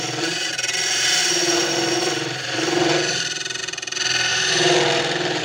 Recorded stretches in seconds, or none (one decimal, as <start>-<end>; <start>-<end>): 0.0-1.4; 3.6-4.3